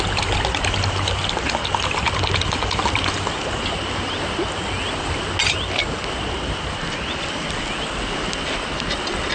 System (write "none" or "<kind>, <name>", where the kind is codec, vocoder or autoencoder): none